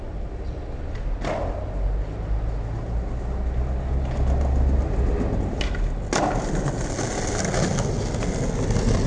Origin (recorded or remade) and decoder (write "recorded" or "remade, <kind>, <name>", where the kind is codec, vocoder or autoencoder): recorded